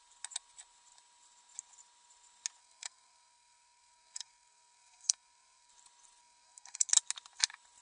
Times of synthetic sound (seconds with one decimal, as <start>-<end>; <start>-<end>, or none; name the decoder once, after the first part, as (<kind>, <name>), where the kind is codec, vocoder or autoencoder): 2.6-5.7 (codec, SNAC); 6.2-6.9